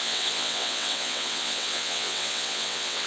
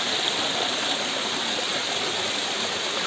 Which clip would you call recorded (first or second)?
second